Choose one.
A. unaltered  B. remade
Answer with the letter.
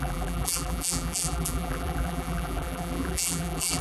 B